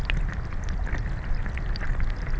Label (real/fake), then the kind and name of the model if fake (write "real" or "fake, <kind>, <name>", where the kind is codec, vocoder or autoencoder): real